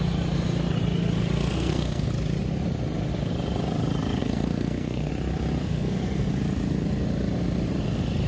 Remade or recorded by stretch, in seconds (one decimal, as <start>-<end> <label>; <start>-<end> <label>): 0.0-1.5 recorded; 1.5-2.1 remade; 2.1-4.2 recorded; 4.2-5.1 remade; 5.1-5.6 recorded; 5.6-6.3 remade; 6.3-8.3 recorded